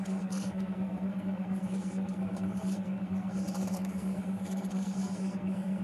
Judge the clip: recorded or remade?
remade